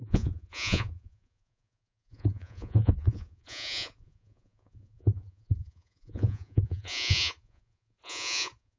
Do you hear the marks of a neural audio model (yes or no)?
yes